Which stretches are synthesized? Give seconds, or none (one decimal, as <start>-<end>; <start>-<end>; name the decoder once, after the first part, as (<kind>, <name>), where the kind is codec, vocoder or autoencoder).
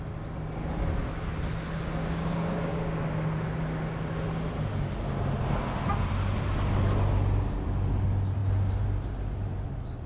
2.0-3.0 (codec, DAC)